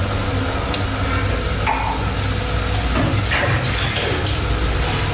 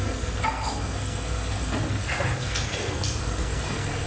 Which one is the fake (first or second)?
second